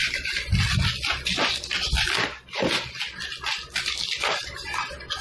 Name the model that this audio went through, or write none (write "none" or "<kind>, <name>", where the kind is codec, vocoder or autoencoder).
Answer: none